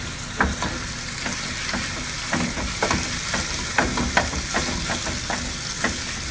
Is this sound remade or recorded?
recorded